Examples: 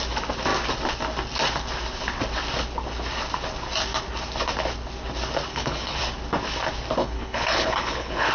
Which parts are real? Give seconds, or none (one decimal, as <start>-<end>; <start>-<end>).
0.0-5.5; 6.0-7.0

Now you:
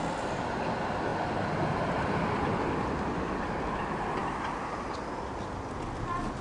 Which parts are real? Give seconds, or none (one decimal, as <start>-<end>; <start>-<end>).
0.0-6.4

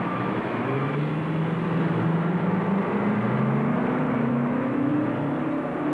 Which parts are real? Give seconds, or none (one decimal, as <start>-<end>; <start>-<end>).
0.8-4.3; 4.9-5.9

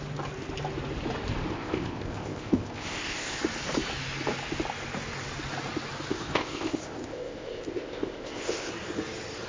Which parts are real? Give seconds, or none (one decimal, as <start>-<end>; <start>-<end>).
0.0-1.5; 3.4-6.1; 8.7-9.5

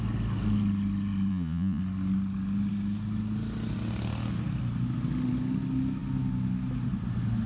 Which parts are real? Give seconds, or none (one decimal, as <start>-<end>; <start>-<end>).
0.0-1.3; 1.8-7.5